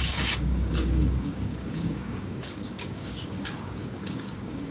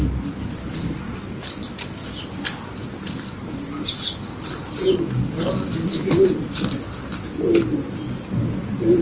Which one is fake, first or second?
first